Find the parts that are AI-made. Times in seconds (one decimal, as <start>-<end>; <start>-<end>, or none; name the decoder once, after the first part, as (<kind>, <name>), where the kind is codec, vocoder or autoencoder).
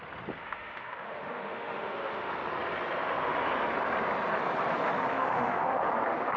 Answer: 0.4-2.3 (autoencoder, DAC-VAE); 5.1-5.9